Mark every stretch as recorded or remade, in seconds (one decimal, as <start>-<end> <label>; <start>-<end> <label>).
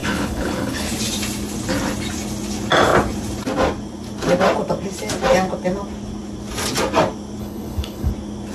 0.0-0.9 remade; 0.9-7.4 recorded; 7.4-8.1 remade; 8.1-8.5 recorded